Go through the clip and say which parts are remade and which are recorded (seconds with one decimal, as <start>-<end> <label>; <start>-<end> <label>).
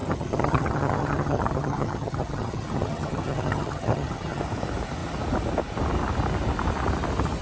0.0-4.4 remade; 4.4-7.4 recorded